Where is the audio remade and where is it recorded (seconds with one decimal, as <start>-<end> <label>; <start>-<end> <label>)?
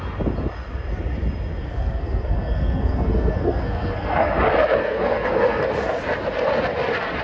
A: 0.0-1.6 recorded; 1.6-4.3 remade; 4.3-4.8 recorded; 4.8-5.7 remade; 5.7-7.2 recorded